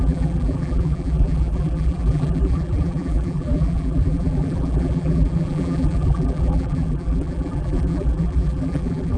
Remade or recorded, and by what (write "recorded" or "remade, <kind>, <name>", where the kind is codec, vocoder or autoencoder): remade, vocoder, BigVGAN v2